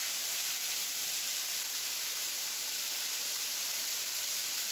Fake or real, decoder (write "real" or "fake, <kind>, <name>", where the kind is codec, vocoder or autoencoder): fake, vocoder, BigVGAN v2